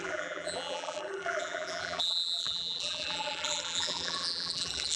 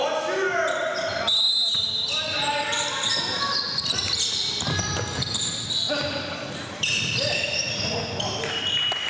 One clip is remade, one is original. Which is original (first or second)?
second